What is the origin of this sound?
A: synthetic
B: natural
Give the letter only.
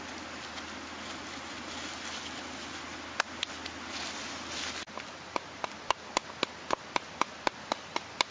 B